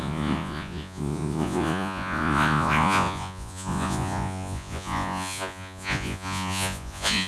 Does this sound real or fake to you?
fake